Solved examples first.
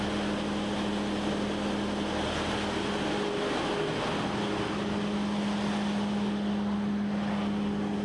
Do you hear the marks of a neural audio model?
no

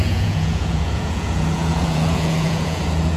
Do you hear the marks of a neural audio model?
yes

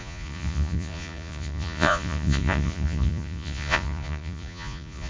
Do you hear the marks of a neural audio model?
yes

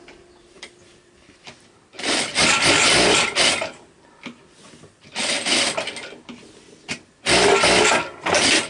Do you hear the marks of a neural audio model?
no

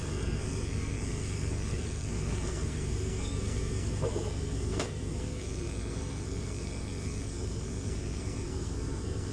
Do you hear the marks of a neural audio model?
yes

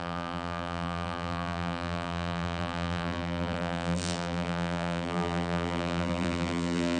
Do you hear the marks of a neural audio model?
yes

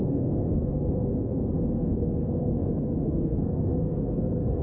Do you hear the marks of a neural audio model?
yes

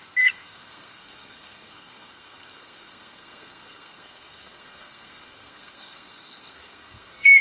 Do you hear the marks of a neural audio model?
yes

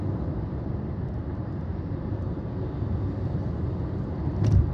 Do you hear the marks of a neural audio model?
no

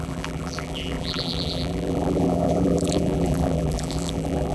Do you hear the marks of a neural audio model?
yes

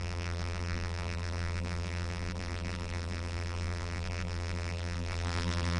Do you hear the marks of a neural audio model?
yes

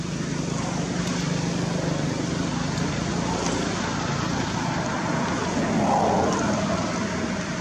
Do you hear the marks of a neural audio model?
no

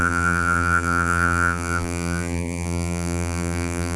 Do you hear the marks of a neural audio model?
yes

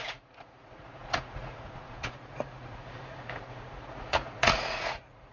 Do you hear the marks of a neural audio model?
yes